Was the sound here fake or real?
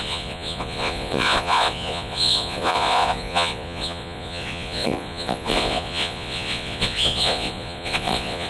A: fake